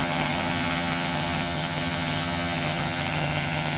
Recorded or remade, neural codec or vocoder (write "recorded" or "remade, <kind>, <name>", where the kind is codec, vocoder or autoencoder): remade, vocoder, HiFi-GAN